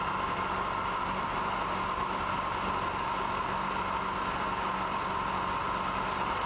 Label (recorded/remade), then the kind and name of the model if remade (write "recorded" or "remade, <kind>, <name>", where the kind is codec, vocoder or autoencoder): recorded